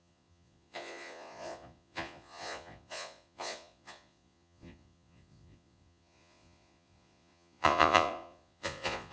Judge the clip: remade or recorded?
remade